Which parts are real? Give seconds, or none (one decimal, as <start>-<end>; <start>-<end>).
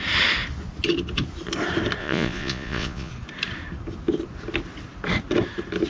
0.0-2.0; 3.1-5.9